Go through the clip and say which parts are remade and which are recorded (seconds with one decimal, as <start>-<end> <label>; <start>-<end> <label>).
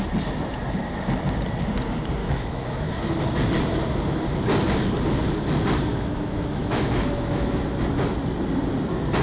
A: 0.0-2.2 recorded; 2.2-3.0 remade; 3.0-5.9 recorded; 5.9-7.6 remade; 7.6-9.2 recorded